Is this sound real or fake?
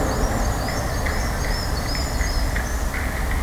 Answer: real